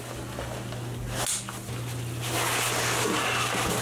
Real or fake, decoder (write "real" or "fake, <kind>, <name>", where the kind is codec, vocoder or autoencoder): real